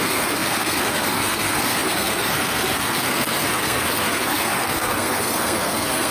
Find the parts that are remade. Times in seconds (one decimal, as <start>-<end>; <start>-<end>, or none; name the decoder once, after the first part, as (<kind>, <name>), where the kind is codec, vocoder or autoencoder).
0.0-6.1 (codec, SNAC)